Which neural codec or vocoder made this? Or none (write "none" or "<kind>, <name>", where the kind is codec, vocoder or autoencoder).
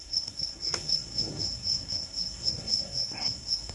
codec, SNAC